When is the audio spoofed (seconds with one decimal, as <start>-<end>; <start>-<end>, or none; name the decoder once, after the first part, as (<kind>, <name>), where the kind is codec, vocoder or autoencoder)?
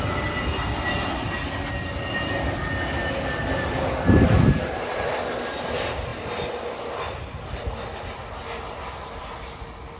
none